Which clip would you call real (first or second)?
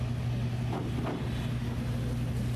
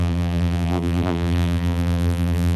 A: first